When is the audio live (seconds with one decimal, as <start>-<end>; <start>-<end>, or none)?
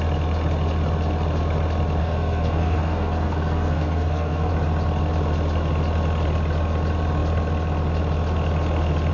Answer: 0.0-2.0; 4.5-9.1